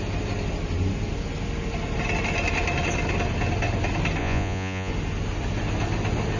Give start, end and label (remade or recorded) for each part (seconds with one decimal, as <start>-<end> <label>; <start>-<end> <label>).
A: 0.0-4.2 recorded; 4.2-4.9 remade; 4.9-6.4 recorded